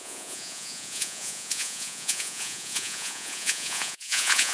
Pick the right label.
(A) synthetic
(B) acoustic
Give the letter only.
A